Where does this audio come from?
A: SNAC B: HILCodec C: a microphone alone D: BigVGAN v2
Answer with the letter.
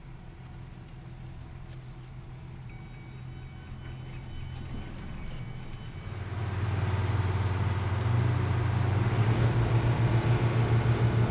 C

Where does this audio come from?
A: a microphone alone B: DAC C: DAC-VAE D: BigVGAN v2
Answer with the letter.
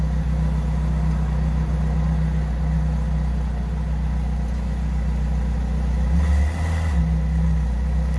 A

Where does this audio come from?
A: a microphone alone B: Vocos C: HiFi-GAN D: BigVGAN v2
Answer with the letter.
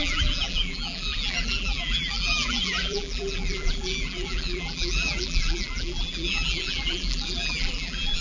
D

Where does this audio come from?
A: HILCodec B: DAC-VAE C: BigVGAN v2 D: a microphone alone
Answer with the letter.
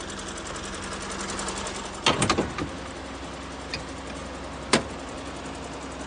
D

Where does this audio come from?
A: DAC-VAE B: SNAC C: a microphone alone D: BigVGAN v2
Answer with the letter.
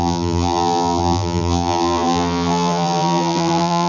D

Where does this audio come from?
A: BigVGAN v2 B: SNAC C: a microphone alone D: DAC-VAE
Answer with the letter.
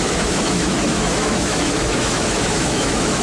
D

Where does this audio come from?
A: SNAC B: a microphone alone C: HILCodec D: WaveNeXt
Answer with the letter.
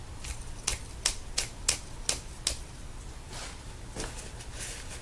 B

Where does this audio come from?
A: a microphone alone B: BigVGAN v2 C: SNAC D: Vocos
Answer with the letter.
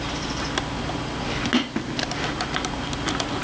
A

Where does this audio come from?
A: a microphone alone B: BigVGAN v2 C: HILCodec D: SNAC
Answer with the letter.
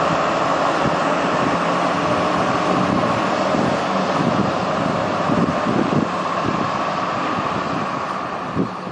A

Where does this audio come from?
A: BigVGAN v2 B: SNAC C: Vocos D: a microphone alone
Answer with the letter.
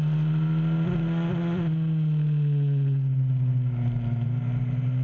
D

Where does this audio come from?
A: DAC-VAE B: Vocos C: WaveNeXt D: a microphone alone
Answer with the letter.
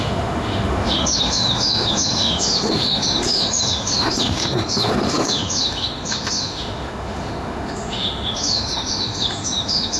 A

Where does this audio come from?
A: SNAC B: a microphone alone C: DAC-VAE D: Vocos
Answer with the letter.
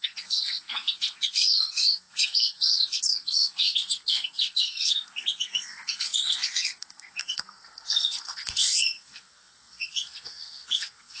A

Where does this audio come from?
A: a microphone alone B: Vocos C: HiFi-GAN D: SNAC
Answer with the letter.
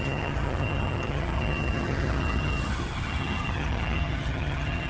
C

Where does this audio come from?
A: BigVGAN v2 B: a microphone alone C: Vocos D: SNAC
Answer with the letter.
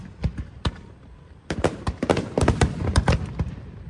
A